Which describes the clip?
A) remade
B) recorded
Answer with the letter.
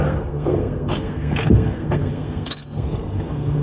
A